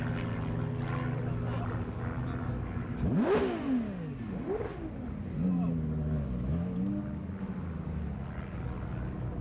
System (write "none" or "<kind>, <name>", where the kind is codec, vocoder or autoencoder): none